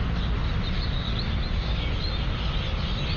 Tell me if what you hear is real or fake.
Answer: real